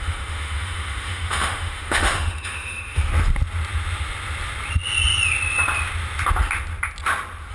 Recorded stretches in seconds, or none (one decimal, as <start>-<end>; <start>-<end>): 3.1-7.5

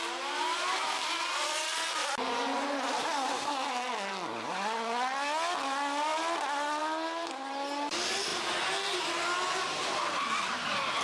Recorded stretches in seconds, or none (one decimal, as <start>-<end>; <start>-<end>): 0.0-11.0